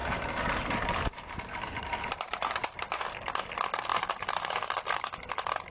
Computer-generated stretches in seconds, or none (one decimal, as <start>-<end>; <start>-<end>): 0.0-3.0; 3.9-4.5